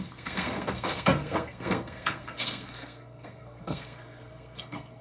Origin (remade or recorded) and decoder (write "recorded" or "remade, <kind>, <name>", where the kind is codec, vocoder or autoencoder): remade, codec, SNAC